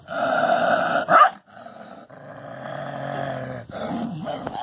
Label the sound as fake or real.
real